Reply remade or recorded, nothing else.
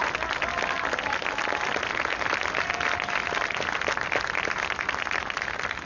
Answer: recorded